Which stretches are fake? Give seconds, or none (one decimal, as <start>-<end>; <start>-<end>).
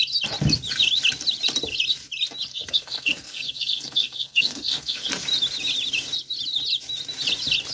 2.5-5.1